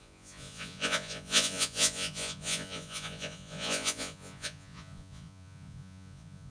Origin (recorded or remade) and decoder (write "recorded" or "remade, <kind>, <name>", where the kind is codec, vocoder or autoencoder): remade, vocoder, Vocos